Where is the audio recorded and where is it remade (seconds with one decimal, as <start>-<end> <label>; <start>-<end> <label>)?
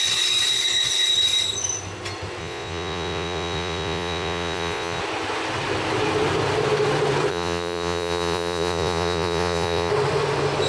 0.0-2.4 recorded; 2.4-5.0 remade; 5.0-7.3 recorded; 7.3-9.9 remade; 9.9-10.7 recorded